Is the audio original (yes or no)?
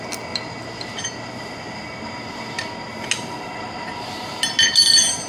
yes